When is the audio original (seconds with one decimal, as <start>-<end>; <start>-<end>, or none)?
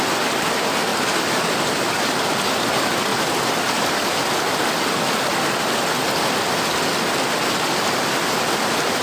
0.0-0.9; 2.2-9.0